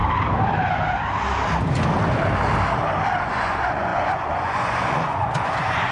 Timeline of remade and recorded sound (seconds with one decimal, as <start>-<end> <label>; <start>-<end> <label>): 0.0-3.2 recorded; 3.2-5.9 remade